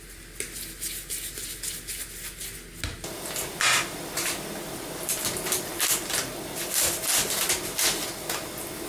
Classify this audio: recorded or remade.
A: recorded